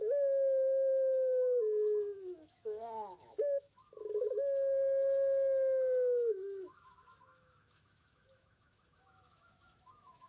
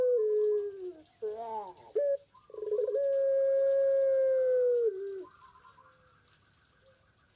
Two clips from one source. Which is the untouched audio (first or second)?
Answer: second